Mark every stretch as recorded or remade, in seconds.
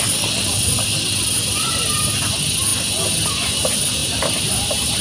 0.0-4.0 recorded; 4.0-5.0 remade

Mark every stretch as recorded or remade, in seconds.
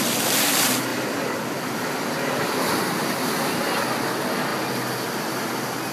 0.0-0.9 recorded; 0.9-2.7 remade; 2.7-5.9 recorded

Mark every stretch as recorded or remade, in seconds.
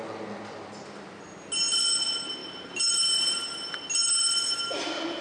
0.0-2.4 recorded; 2.4-3.9 remade; 3.9-5.2 recorded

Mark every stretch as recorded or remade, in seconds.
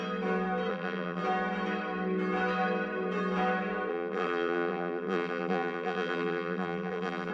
0.0-0.7 recorded; 0.7-1.2 remade; 1.2-3.9 recorded; 3.9-7.3 remade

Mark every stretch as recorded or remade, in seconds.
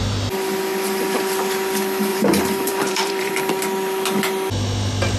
0.0-2.1 recorded; 2.1-3.3 remade; 3.3-5.2 recorded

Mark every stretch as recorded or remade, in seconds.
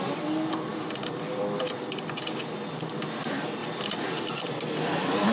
0.0-0.7 recorded; 0.7-1.9 remade; 1.9-3.6 recorded; 3.6-5.3 remade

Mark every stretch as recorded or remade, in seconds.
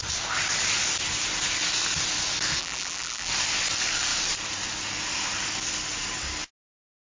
0.0-2.6 recorded; 2.6-3.3 remade; 3.3-7.0 recorded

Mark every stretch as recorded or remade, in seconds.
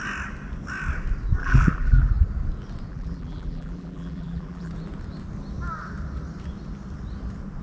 0.0-1.4 recorded; 1.4-2.1 remade; 2.1-2.9 recorded; 2.9-4.7 remade; 4.7-7.6 recorded